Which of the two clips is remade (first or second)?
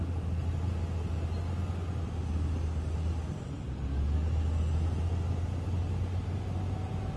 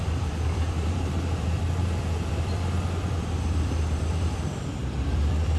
second